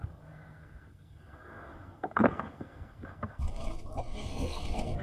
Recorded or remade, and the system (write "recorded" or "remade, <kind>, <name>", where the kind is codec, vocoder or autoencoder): remade, codec, SNAC